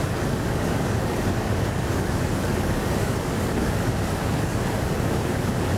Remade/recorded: remade